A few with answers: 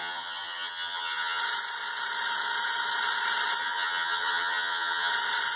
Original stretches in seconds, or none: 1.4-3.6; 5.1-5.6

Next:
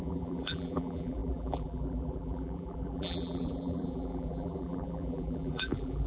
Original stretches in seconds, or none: none

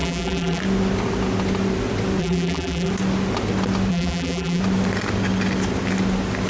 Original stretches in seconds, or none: 0.6-2.2; 2.9-3.9; 4.6-6.5

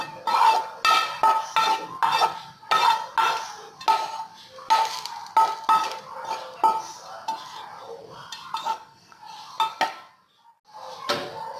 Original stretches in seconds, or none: 0.0-8.6; 9.2-11.6

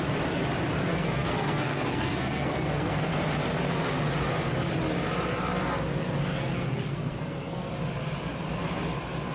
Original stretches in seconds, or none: 0.0-0.9; 3.2-6.3; 7.7-9.3

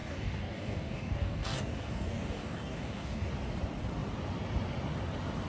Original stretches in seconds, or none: 3.3-5.5

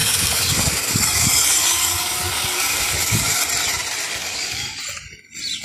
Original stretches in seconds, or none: 3.4-4.2; 4.8-5.6